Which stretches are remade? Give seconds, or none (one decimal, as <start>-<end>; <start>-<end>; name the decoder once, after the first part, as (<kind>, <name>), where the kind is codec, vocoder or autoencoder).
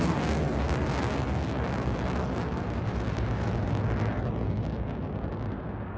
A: 2.5-3.7 (vocoder, BigVGAN v2)